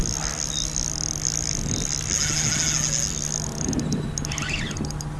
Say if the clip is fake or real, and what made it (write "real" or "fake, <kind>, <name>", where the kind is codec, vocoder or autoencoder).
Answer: real